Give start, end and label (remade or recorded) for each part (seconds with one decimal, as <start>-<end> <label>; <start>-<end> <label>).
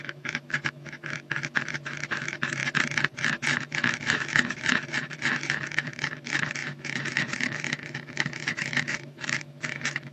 0.0-2.6 remade; 2.6-3.4 recorded; 3.4-10.1 remade